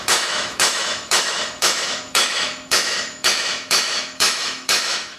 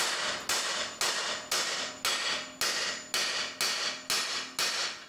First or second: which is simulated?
first